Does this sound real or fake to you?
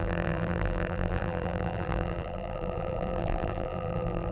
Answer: fake